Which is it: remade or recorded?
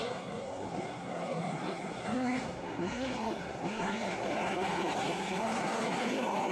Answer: remade